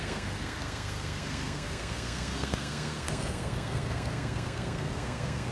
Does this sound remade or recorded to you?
remade